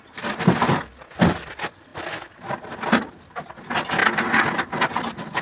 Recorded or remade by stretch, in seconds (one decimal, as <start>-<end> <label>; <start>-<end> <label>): 0.0-5.4 recorded